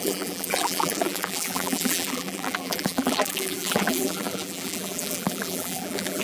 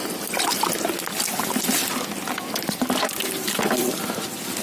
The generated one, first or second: first